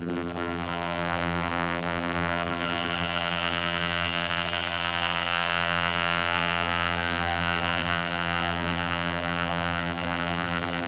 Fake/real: fake